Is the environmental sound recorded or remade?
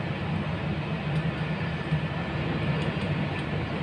recorded